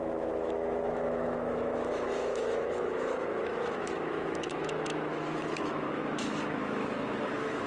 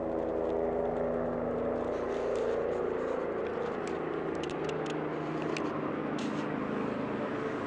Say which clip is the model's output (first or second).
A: first